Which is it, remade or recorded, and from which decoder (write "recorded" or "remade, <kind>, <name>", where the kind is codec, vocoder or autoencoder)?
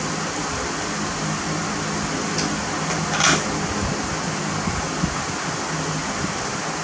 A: recorded